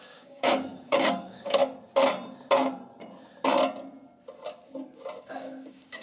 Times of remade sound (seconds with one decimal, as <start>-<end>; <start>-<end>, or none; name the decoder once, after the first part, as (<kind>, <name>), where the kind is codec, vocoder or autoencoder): 0.0-1.6 (codec, DAC); 5.2-6.0